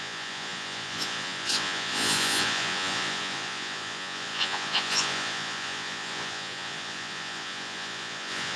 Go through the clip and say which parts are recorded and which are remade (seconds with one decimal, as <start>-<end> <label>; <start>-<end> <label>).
0.0-8.6 remade